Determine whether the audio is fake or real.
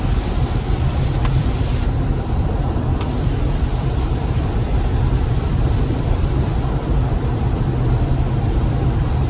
fake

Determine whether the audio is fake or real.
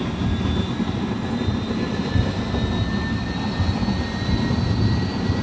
real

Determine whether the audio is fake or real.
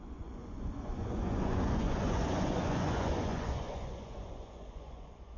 fake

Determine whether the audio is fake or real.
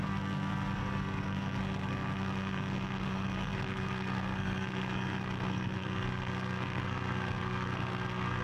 fake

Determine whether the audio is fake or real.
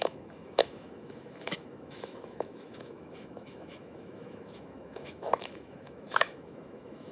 fake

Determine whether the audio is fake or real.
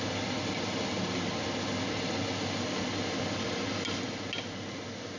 real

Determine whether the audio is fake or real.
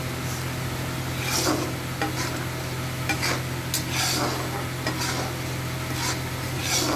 real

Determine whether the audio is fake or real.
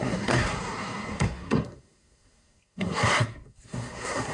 fake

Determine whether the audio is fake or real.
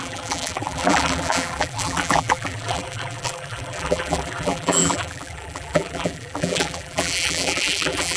fake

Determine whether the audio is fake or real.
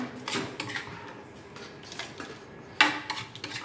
real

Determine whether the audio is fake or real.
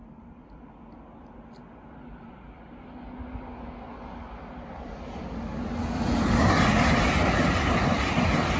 real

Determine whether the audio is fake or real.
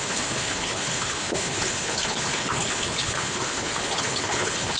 fake